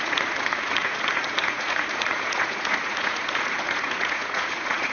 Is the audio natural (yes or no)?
no